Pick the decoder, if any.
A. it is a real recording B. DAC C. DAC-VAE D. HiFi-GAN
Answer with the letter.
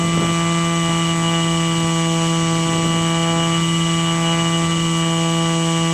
A